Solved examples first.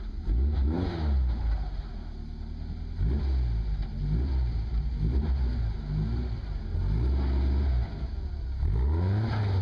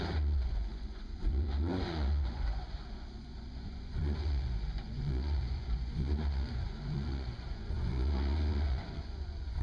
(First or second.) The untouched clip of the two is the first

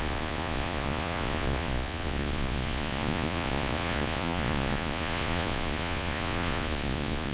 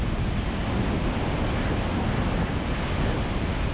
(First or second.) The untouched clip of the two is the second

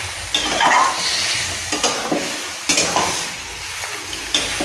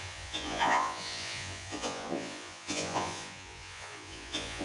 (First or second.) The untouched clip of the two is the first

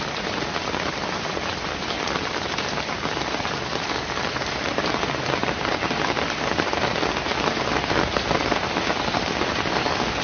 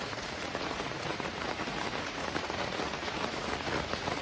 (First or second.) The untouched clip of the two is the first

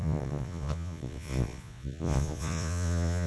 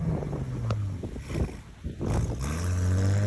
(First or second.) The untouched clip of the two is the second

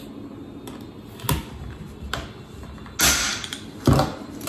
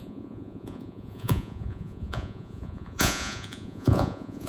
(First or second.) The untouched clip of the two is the first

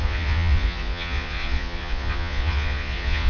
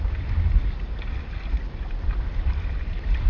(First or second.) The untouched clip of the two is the second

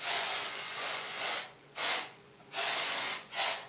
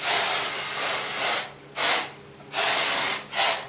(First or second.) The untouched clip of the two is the second